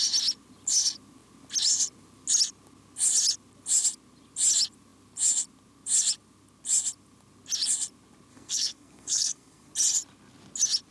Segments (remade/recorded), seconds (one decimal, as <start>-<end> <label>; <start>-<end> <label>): 0.0-8.3 recorded; 8.3-9.7 remade; 9.7-10.9 recorded